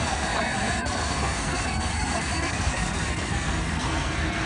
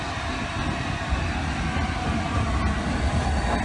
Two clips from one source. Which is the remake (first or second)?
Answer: first